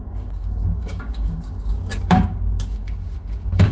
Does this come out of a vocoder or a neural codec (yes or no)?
yes